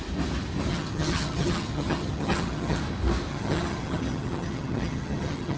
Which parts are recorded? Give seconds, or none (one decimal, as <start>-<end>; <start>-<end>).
0.0-0.7; 2.8-3.3